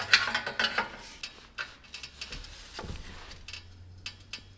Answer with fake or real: real